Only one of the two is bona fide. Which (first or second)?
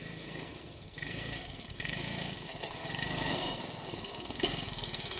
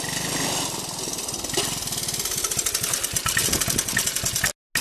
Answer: second